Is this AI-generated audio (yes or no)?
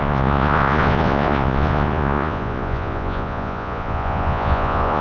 yes